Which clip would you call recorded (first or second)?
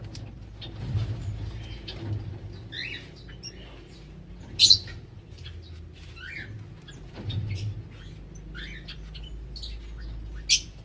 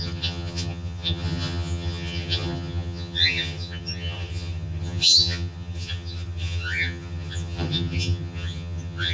first